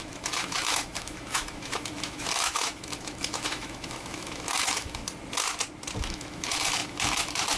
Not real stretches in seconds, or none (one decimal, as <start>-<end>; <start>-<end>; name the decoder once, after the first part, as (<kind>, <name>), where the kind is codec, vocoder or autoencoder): 0.0-5.0 (autoencoder, DAC-VAE); 6.0-7.6